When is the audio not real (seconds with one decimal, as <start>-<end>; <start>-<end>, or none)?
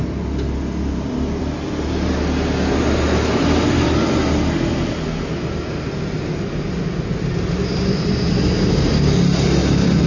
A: none